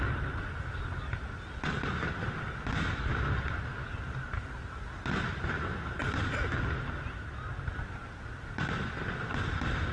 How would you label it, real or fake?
real